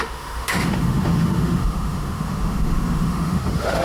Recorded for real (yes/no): no